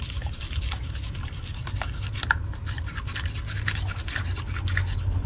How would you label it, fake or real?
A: real